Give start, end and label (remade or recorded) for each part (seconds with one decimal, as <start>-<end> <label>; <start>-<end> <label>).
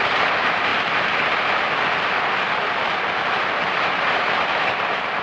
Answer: 0.0-0.7 remade; 0.7-3.8 recorded; 3.8-5.2 remade